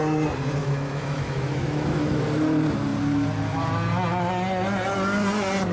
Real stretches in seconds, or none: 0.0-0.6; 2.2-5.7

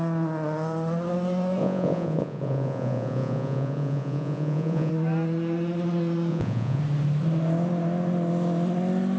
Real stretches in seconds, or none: 0.0-1.6; 4.9-6.3; 6.8-9.2

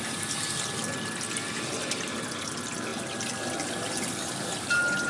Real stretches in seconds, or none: 0.0-2.9

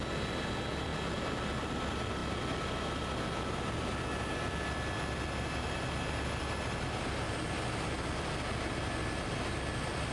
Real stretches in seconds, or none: 0.0-10.1

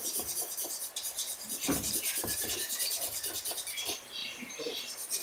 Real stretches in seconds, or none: 0.5-4.2